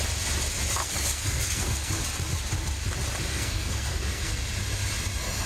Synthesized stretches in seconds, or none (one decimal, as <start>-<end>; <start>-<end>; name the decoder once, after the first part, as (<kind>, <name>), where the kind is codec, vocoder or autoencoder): 0.8-2.0 (codec, SNAC); 3.3-4.4